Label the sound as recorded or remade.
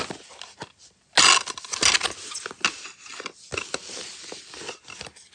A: recorded